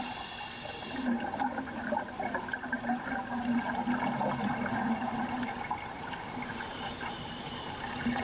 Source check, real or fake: fake